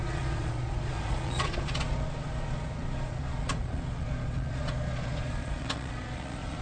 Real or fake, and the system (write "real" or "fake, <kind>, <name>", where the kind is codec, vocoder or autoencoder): fake, vocoder, Vocos